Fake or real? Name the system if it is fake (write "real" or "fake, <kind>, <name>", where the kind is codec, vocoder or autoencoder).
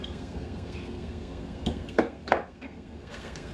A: fake, codec, SNAC